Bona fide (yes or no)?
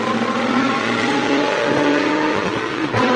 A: no